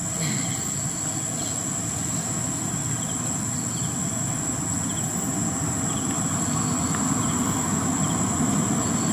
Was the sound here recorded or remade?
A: recorded